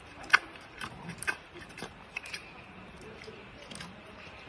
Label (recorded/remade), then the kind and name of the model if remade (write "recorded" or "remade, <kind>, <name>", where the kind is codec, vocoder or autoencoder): remade, vocoder, BigVGAN v2